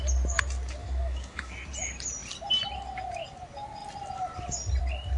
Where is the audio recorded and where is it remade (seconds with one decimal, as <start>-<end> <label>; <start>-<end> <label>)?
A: 0.0-0.8 recorded; 0.8-1.5 remade; 1.5-5.2 recorded